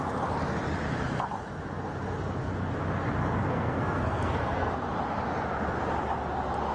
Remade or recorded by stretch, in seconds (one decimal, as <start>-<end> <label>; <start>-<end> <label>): 0.0-3.4 recorded; 3.4-4.7 remade; 4.7-6.7 recorded

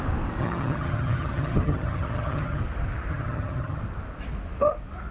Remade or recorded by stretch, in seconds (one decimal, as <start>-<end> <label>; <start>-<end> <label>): 0.0-0.4 recorded; 0.4-2.6 remade; 2.6-3.1 recorded; 3.1-3.8 remade; 3.8-5.1 recorded

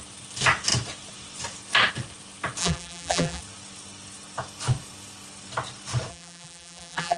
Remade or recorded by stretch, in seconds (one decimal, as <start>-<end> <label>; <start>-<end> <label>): 0.0-2.6 recorded; 2.6-3.4 remade; 3.4-6.1 recorded; 6.1-7.2 remade

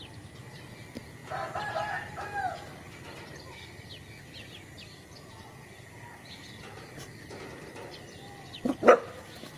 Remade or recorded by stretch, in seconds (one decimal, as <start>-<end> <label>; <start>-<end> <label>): 0.0-9.6 recorded

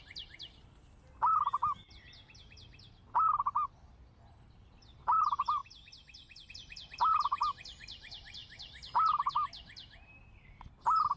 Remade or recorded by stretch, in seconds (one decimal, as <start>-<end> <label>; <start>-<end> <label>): 0.0-11.2 recorded

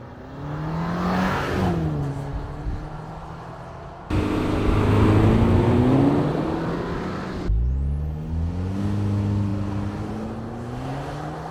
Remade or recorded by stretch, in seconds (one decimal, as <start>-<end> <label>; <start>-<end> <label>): 0.0-11.5 recorded

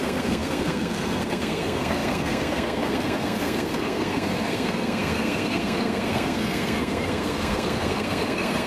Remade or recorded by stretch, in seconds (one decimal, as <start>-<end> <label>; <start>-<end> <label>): 0.0-8.7 remade

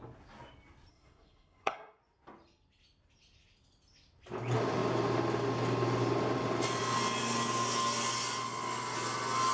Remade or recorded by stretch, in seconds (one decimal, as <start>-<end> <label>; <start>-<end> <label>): 0.0-0.9 recorded; 0.9-2.0 remade; 2.0-9.5 recorded